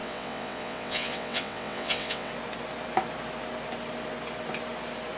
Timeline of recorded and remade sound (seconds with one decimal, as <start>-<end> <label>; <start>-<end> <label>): 0.0-2.3 remade; 2.3-5.2 recorded